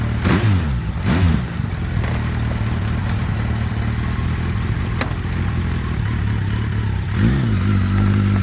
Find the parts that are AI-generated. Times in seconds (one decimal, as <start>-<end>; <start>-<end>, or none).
none